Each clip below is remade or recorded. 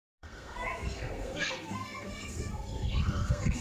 remade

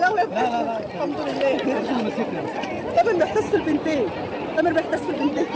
recorded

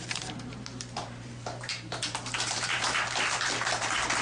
remade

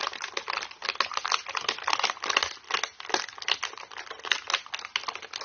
recorded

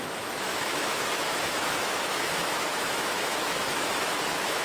remade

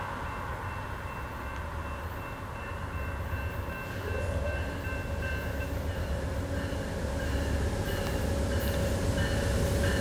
recorded